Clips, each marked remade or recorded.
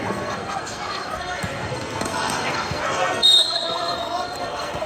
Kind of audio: remade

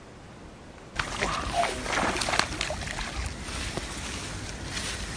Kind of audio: recorded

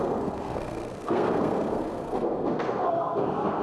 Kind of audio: remade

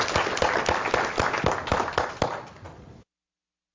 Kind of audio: recorded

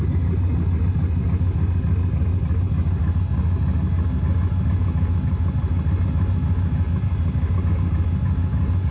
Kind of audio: recorded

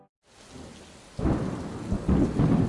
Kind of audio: recorded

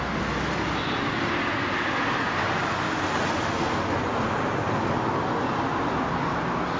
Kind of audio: recorded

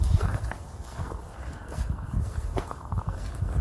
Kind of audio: remade